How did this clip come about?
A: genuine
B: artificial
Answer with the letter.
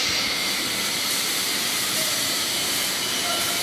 B